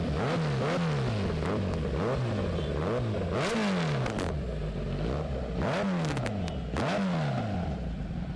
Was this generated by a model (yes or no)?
no